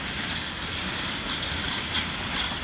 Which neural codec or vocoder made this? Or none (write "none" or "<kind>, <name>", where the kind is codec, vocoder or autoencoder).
none